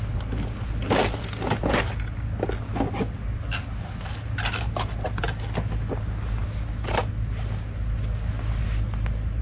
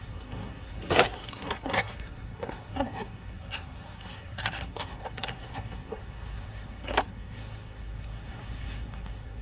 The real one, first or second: first